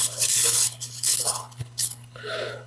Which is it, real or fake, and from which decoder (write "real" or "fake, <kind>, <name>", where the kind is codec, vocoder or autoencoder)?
fake, codec, HILCodec